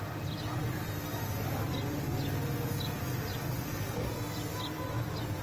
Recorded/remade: recorded